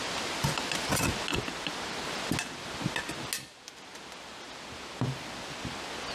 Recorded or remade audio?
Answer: recorded